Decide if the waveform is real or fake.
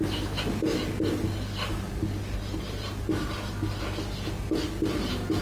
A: real